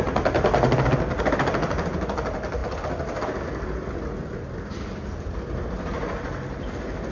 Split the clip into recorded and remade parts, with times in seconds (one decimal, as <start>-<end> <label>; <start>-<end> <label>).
0.0-7.1 recorded